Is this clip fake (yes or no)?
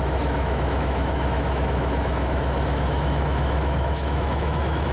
yes